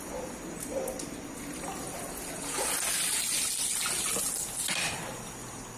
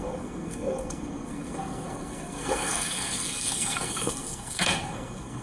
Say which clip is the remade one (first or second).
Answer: second